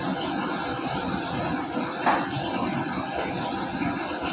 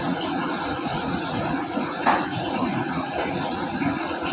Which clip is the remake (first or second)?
second